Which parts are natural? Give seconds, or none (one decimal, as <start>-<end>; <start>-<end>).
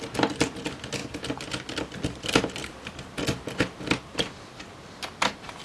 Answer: 0.0-5.6